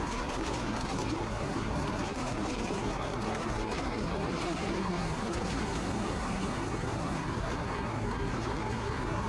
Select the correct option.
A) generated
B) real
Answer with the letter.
A